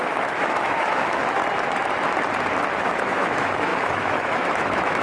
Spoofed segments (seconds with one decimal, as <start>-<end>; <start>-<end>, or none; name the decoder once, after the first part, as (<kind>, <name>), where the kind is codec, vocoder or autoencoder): 0.0-1.4 (autoencoder, DAC-VAE); 2.8-5.0